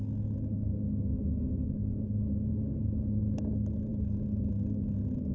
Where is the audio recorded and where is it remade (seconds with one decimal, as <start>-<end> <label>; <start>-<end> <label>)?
0.0-5.3 recorded

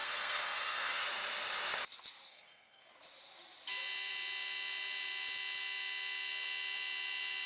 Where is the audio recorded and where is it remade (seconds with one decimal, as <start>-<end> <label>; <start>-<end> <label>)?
0.0-1.0 remade; 1.0-2.3 recorded; 2.3-2.9 remade; 2.9-7.5 recorded

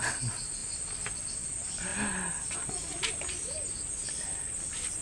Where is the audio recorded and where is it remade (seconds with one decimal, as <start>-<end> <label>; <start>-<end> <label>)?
0.0-5.0 recorded

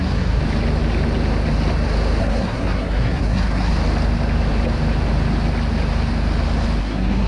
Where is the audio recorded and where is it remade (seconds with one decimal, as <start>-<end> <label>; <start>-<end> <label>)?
0.0-0.4 remade; 0.4-2.2 recorded; 2.2-3.7 remade; 3.7-6.8 recorded; 6.8-7.3 remade

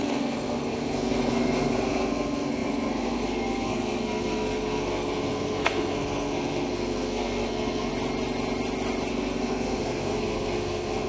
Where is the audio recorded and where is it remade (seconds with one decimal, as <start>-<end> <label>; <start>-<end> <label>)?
0.0-7.9 remade; 7.9-9.1 recorded; 9.1-11.1 remade

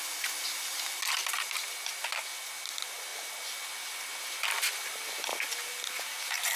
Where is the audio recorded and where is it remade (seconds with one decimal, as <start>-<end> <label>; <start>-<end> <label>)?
0.0-6.6 recorded

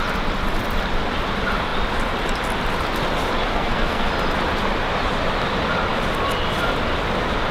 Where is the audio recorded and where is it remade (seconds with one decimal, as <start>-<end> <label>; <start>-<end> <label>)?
0.0-3.5 recorded; 3.5-4.1 remade; 4.1-7.5 recorded